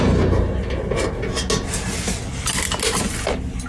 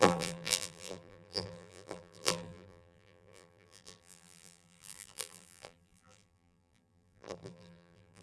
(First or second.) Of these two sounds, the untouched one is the first